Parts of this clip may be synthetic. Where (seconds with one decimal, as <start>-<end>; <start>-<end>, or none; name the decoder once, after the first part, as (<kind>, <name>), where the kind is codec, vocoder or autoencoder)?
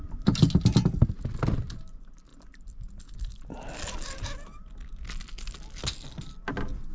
none